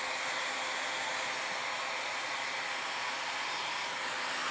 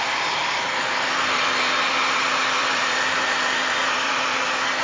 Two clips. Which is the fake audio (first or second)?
second